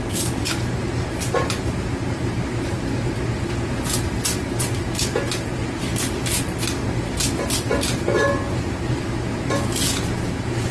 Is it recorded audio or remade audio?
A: recorded